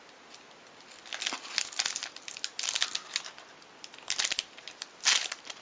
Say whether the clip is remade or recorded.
recorded